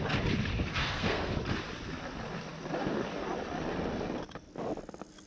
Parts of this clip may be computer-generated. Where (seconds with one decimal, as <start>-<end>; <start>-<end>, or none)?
0.7-1.3

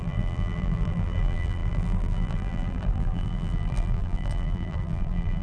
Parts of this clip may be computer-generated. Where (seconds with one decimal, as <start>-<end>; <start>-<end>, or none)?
0.0-5.4

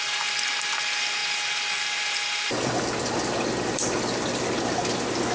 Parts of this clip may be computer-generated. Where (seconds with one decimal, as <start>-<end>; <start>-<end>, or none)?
1.2-4.4

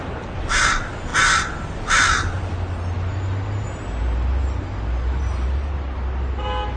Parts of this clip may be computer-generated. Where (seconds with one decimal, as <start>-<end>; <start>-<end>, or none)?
none

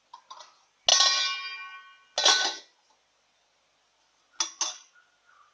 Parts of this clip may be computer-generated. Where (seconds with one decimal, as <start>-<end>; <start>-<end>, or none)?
none

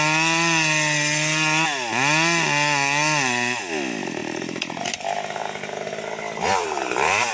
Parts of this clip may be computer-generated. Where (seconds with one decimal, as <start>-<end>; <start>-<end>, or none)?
none

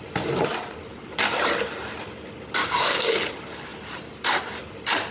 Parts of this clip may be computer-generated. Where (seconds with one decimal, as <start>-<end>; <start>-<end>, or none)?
2.6-3.1